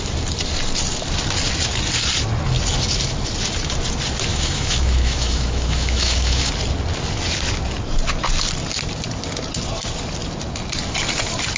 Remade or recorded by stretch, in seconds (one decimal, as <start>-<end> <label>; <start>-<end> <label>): 0.0-4.3 recorded; 4.3-6.5 remade; 6.5-11.6 recorded